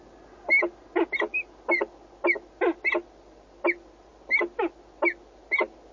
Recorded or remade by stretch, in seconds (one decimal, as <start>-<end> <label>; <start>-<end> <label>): 0.0-5.9 recorded